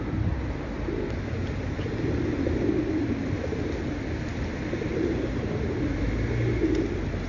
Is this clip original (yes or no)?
yes